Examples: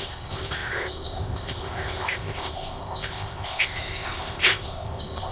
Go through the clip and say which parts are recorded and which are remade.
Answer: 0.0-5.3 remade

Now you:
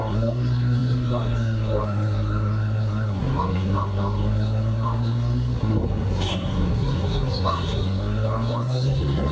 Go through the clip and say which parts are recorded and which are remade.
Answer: 0.0-9.3 remade

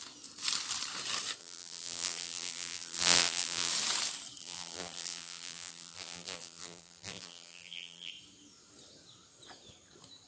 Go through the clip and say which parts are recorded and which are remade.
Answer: 0.0-1.4 recorded; 1.4-3.7 remade; 3.7-4.4 recorded; 4.4-8.1 remade; 8.1-10.3 recorded